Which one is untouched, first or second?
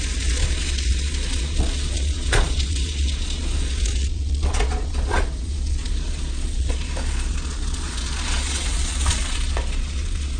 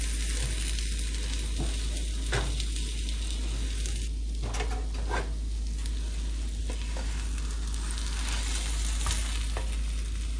second